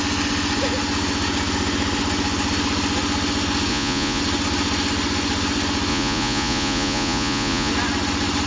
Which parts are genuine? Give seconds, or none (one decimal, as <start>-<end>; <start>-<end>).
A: 0.0-3.7; 4.2-5.9; 7.7-8.5